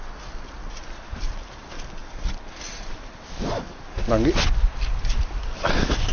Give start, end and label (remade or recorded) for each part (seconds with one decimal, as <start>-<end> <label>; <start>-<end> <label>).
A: 0.0-6.1 recorded